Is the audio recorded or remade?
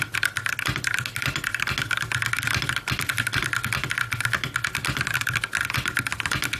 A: recorded